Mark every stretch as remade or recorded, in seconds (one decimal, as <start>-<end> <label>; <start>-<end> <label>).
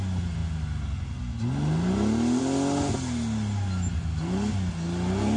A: 0.0-5.4 recorded